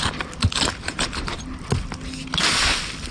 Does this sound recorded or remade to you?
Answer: recorded